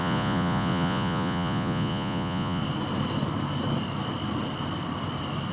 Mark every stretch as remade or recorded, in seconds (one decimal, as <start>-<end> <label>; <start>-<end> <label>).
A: 0.0-2.6 remade; 2.6-5.5 recorded